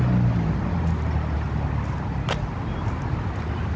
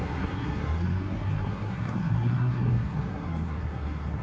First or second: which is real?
first